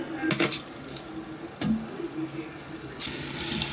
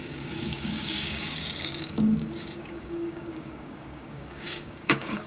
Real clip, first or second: first